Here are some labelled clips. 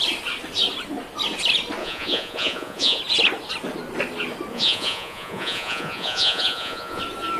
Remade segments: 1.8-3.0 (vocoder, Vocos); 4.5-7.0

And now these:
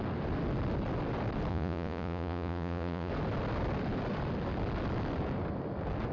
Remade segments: 1.5-3.1 (vocoder, Vocos)